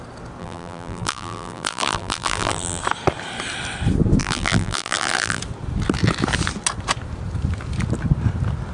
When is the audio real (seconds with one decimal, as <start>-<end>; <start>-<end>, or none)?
0.0-0.4; 2.8-4.2; 5.4-8.7

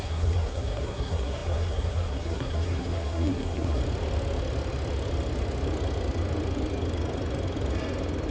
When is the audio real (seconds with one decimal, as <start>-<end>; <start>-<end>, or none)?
3.8-8.3

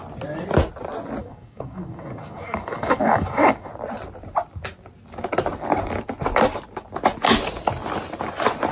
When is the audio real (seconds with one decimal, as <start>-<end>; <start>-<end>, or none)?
0.0-1.2; 3.7-8.7